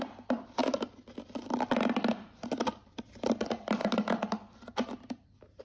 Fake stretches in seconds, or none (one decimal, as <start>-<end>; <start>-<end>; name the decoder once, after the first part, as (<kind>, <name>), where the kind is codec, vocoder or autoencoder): 0.0-0.6 (vocoder, BigVGAN v2); 1.2-5.6